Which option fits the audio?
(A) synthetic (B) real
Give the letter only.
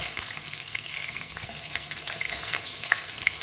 A